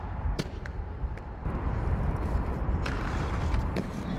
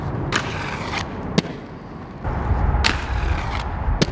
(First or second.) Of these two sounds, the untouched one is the second